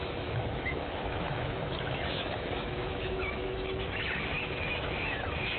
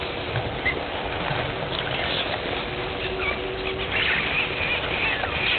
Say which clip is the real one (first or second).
second